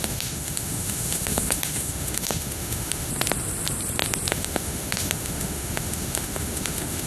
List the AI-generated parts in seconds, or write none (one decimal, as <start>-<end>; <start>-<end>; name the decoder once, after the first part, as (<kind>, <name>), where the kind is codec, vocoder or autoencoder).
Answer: 0.0-3.1 (autoencoder, DAC-VAE); 4.3-7.1